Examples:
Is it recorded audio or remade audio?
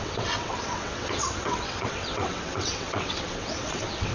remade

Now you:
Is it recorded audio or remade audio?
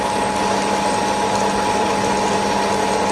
recorded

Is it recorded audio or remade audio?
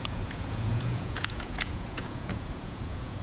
remade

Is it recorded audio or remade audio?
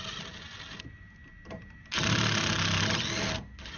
recorded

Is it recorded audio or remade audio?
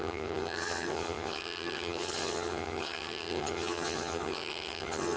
remade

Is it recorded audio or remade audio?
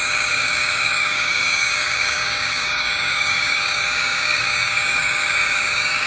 remade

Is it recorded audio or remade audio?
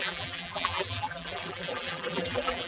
remade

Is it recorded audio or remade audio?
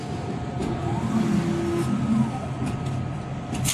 recorded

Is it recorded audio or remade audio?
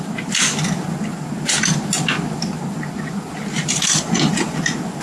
recorded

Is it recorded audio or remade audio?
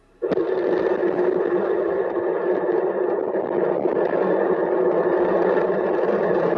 remade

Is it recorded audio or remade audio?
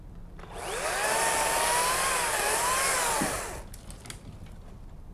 recorded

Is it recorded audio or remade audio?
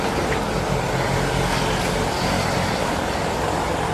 recorded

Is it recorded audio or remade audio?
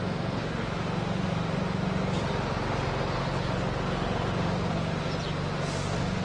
recorded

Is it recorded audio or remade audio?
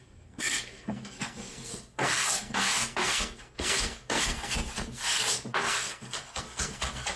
remade